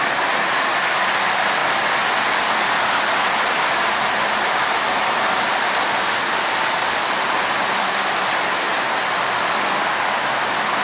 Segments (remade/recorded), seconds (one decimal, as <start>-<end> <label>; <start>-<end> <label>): 0.0-10.8 recorded